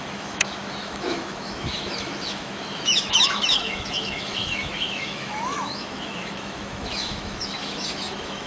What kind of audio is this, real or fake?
fake